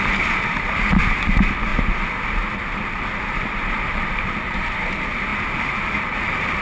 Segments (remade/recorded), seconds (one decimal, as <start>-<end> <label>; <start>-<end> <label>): 0.0-1.7 remade; 1.7-3.6 recorded; 3.6-6.6 remade